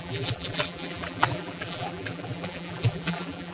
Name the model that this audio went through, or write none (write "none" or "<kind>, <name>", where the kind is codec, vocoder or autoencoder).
vocoder, BigVGAN v2